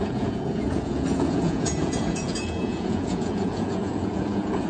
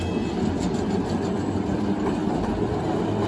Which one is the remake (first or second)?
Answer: first